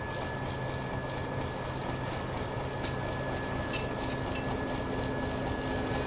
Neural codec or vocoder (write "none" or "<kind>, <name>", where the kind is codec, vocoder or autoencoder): none